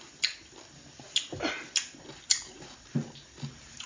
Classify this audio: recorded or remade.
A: recorded